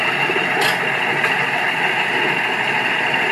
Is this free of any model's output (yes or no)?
yes